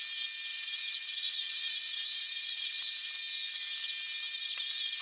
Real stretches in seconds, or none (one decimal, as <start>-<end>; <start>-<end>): 0.0-0.5; 3.1-5.0